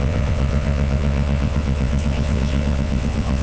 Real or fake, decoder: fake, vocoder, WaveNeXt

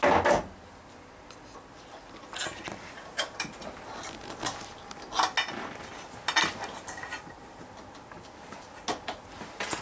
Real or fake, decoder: real